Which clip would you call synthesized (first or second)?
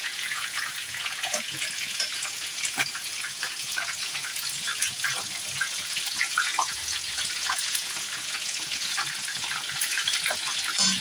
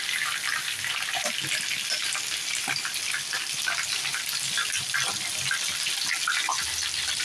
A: first